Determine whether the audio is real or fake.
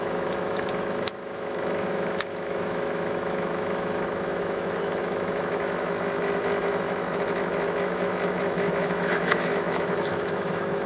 fake